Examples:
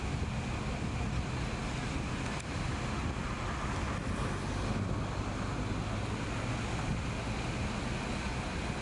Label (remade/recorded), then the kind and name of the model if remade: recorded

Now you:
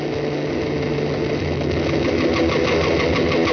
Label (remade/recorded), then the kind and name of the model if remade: recorded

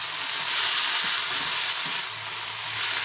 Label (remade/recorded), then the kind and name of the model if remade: recorded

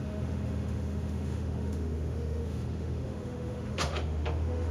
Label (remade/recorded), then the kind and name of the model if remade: remade, autoencoder, DAC-VAE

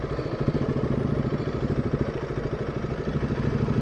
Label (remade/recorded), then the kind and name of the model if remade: recorded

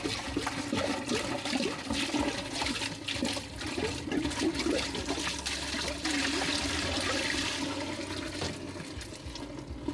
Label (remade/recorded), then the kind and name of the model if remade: recorded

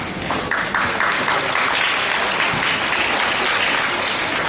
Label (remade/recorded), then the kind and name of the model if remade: recorded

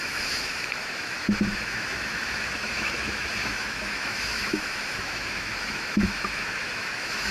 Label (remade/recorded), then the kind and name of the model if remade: remade, autoencoder, DAC-VAE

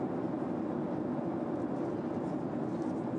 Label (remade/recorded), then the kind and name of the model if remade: recorded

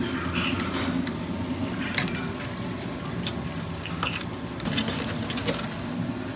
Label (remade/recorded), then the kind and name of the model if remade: recorded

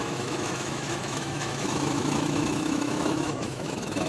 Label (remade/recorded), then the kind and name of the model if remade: remade, autoencoder, DAC-VAE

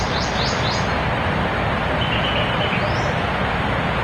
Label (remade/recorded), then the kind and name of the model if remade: recorded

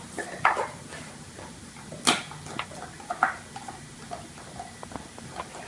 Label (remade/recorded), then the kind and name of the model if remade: recorded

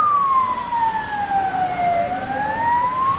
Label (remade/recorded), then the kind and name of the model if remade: recorded